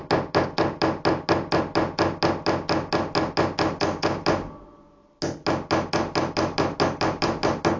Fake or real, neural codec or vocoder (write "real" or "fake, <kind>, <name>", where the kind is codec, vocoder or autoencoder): real